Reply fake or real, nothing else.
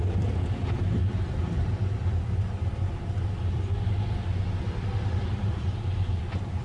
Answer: fake